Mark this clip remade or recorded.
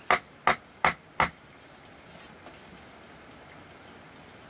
recorded